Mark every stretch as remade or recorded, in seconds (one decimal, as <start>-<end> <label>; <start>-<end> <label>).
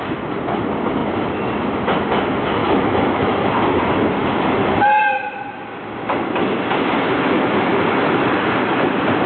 0.0-2.6 recorded; 2.6-3.5 remade; 3.5-9.3 recorded